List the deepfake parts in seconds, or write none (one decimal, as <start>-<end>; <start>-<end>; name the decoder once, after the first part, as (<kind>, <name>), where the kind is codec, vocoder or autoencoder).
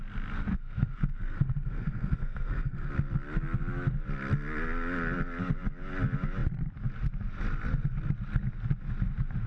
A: 0.5-2.9 (codec, SNAC)